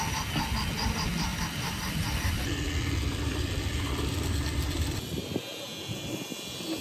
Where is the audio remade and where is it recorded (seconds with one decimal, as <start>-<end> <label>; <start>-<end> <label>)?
0.0-1.3 recorded; 1.3-5.4 remade; 5.4-6.8 recorded